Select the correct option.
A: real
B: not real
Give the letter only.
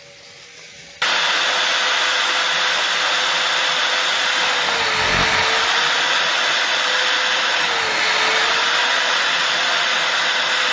A